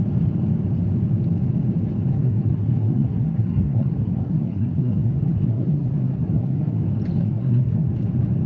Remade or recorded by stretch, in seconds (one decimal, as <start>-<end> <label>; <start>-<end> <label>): 0.0-2.1 recorded; 2.1-6.8 remade; 6.8-7.2 recorded; 7.2-7.9 remade; 7.9-8.5 recorded